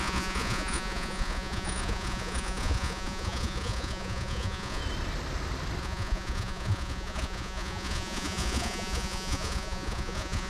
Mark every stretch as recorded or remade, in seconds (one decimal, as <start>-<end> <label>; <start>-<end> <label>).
0.0-4.8 remade; 4.8-5.8 recorded; 5.8-10.5 remade